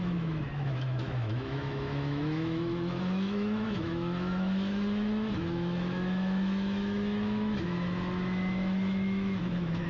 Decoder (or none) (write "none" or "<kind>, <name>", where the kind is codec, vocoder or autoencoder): autoencoder, DAC-VAE